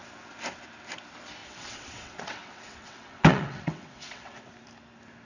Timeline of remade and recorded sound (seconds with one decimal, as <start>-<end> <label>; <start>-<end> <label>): 0.0-1.4 recorded; 1.4-4.5 remade; 4.5-5.2 recorded